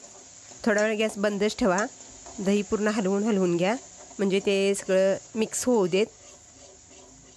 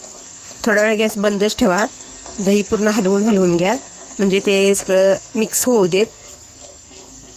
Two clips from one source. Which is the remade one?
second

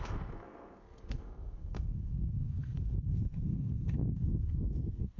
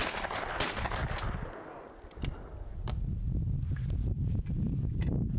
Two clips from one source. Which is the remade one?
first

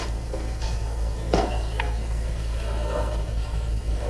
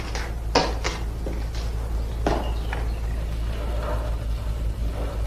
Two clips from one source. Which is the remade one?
first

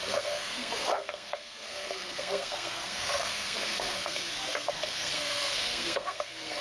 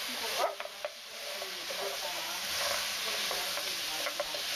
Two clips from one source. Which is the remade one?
first